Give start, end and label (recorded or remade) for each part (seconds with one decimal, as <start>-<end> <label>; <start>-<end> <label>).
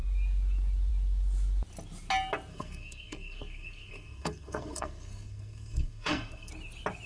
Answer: 0.0-2.5 recorded; 2.5-6.5 remade; 6.5-7.1 recorded